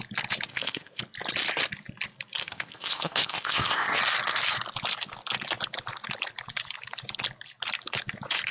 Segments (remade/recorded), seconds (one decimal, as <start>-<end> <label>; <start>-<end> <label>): 0.0-0.5 recorded; 0.5-1.0 remade; 1.0-2.4 recorded; 2.4-4.0 remade; 4.0-8.5 recorded